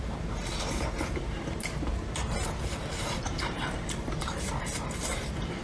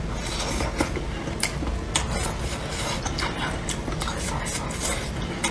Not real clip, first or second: first